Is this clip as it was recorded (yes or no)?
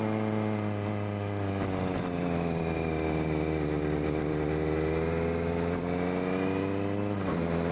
yes